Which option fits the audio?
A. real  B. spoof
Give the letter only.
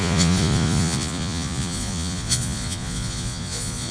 B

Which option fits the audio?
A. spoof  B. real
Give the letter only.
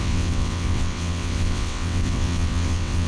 A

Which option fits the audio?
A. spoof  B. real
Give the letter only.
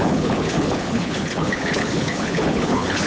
A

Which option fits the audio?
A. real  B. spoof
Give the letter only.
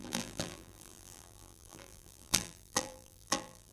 B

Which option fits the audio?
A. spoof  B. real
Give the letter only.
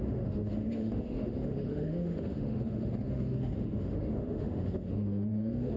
A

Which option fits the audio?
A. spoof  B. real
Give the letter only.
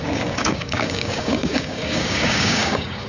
A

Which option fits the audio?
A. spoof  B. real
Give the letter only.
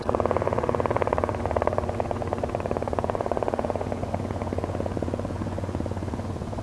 A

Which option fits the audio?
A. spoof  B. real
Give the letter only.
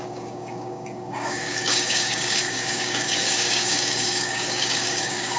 A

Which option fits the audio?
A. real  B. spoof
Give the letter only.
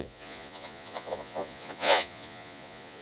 B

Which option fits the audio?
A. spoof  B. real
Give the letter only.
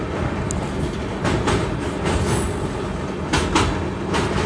B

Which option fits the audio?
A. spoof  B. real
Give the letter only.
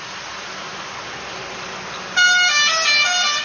B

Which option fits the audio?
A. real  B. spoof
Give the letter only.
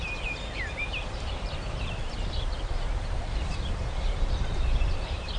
B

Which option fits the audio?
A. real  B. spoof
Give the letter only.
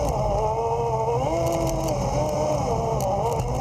A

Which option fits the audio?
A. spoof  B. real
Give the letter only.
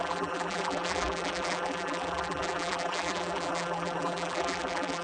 A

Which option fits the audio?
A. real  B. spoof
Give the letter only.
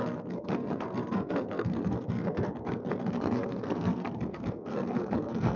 B